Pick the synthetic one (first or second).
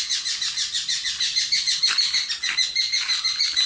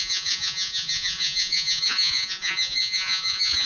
second